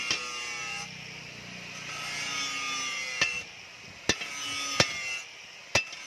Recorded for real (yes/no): yes